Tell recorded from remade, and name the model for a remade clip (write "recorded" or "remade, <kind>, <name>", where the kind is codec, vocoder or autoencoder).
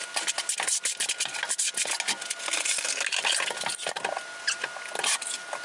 recorded